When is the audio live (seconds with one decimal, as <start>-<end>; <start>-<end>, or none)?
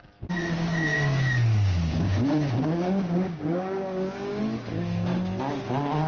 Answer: 0.0-0.7; 4.4-6.1